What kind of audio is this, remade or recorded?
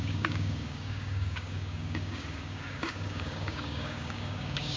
remade